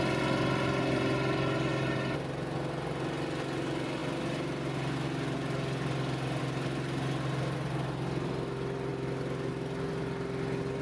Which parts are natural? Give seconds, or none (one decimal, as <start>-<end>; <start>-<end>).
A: 0.0-10.8